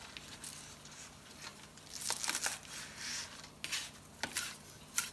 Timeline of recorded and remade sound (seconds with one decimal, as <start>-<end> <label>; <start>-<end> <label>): 0.0-5.1 recorded